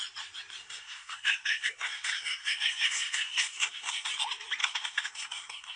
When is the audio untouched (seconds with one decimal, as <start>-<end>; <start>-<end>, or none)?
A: 0.0-0.6; 4.1-4.6